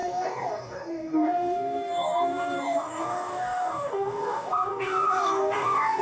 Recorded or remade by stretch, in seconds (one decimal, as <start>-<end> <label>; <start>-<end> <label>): 0.0-6.0 remade